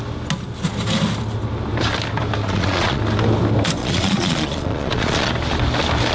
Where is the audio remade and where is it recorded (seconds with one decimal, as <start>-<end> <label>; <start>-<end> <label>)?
0.0-2.4 recorded; 2.4-3.0 remade; 3.0-3.8 recorded; 3.8-5.3 remade; 5.3-6.1 recorded